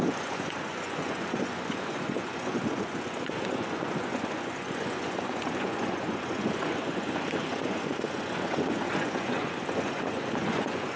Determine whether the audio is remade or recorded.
remade